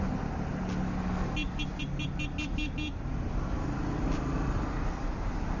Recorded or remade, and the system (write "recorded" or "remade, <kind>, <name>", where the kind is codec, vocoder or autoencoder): recorded